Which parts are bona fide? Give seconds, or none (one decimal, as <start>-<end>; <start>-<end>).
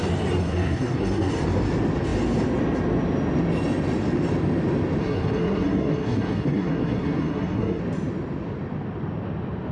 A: 0.0-0.4; 1.3-5.0; 7.8-9.7